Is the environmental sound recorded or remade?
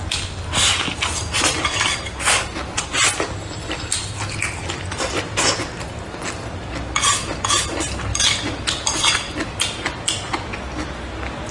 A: recorded